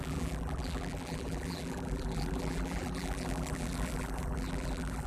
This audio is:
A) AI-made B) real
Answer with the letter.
A